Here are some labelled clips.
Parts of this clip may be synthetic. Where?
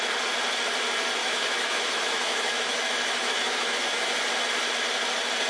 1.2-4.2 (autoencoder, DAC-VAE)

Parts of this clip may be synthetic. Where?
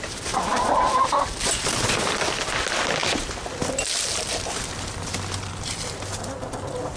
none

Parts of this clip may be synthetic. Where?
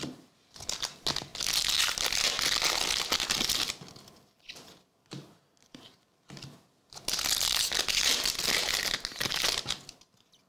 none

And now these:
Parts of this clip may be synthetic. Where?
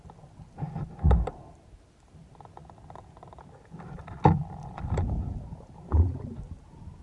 none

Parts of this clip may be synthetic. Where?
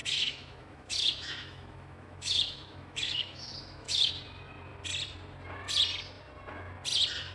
0.0-4.1 (autoencoder, DAC-VAE)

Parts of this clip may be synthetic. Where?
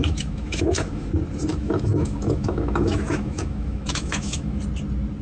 0.0-1.1 (autoencoder, DAC-VAE); 1.5-4.6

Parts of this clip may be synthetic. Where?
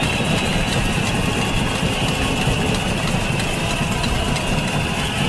none